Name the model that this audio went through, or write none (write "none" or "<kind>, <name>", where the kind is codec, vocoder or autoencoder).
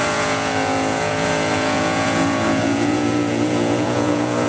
vocoder, Vocos